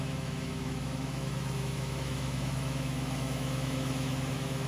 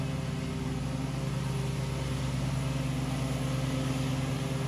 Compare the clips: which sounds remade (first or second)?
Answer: first